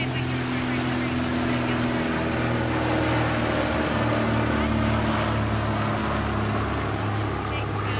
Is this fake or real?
real